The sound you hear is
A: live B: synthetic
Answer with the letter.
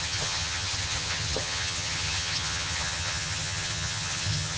B